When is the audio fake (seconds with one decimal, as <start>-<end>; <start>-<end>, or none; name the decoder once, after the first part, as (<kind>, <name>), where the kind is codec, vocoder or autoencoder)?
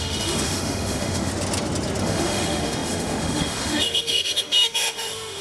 0.0-1.3 (autoencoder, DAC-VAE); 2.0-5.4